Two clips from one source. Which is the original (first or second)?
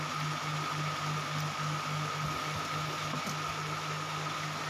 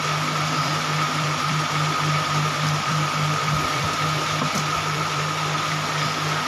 first